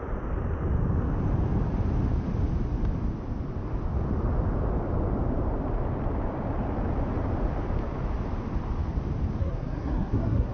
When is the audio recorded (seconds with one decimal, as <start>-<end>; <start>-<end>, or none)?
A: 0.0-9.4